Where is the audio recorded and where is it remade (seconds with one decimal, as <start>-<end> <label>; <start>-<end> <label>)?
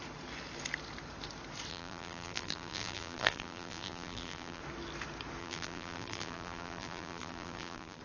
0.0-1.7 recorded; 1.7-4.6 remade; 4.6-5.4 recorded; 5.4-8.0 remade